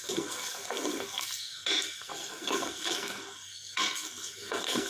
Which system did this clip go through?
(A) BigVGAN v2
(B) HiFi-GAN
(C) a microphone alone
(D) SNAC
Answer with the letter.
D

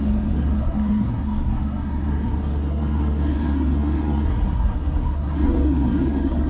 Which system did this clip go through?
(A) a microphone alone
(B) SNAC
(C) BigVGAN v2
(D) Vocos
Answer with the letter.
B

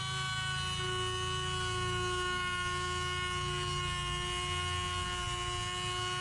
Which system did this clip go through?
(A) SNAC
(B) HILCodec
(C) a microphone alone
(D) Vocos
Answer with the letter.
C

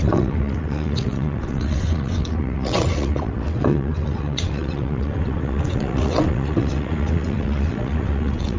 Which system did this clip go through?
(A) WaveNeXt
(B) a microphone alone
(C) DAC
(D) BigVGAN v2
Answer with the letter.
A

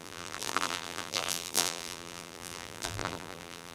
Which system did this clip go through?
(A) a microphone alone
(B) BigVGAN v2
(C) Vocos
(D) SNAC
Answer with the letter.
B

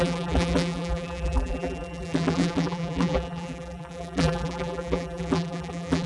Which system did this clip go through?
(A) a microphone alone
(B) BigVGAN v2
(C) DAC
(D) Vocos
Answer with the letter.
B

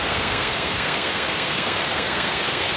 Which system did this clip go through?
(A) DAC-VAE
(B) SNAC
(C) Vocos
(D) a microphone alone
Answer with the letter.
B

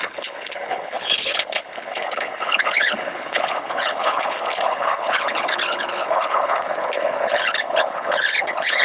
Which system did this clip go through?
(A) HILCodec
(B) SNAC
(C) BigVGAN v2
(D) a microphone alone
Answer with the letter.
A